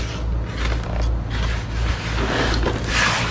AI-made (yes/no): no